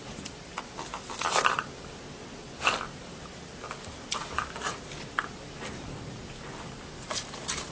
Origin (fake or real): real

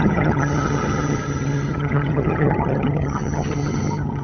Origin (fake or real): fake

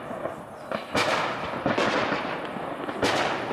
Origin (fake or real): real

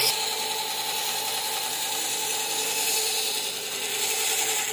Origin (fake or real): real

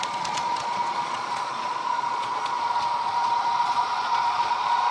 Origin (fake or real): fake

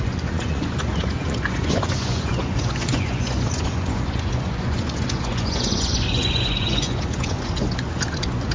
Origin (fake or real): fake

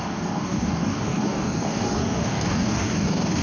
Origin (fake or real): fake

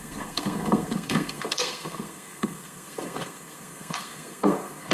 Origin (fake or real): fake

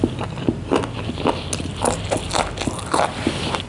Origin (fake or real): real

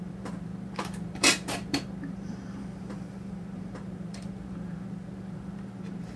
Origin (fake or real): fake